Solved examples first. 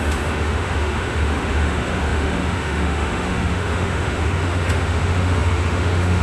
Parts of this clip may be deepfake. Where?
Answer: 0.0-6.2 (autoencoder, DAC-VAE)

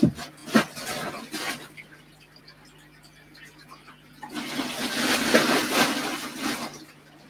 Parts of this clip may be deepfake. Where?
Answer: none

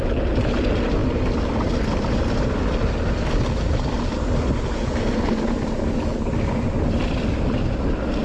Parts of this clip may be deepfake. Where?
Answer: none

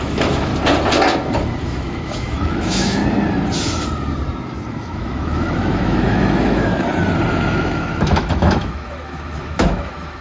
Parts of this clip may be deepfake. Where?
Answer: 0.0-0.5 (autoencoder, DAC-VAE); 1.6-3.0; 4.7-6.7; 7.3-10.2

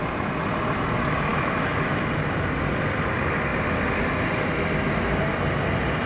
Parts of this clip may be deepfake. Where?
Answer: 1.3-2.0 (autoencoder, DAC-VAE)